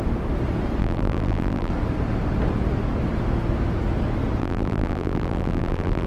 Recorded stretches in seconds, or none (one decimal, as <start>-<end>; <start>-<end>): 0.0-0.8; 1.7-4.4